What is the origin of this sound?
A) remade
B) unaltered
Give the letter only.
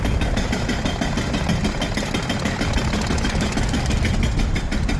B